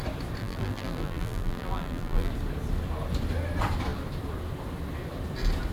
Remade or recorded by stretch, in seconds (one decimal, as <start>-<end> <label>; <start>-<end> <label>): 0.0-0.4 recorded; 0.4-2.3 remade; 2.3-5.7 recorded